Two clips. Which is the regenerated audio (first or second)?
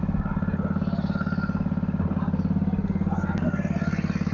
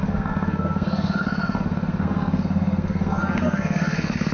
second